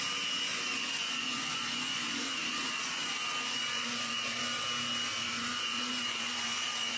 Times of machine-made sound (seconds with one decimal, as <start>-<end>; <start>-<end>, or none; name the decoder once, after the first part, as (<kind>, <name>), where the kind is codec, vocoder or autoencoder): 0.5-4.4 (vocoder, Vocos); 5.2-7.0